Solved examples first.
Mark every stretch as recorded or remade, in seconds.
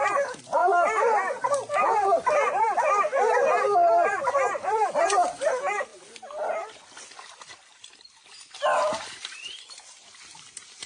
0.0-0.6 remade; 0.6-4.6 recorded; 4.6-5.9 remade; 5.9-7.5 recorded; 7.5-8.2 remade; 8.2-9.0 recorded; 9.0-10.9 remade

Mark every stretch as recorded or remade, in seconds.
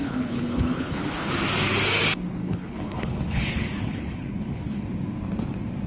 0.0-1.3 remade; 1.3-2.4 recorded; 2.4-4.8 remade; 4.8-5.9 recorded